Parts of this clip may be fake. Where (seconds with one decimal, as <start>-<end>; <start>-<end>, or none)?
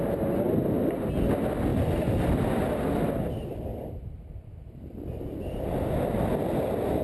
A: 1.7-3.1; 3.7-5.0